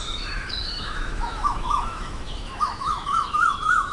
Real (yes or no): no